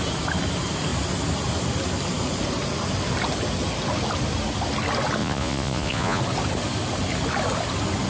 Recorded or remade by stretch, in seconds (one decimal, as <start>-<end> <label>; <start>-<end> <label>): 0.0-5.2 recorded; 5.2-6.2 remade; 6.2-8.1 recorded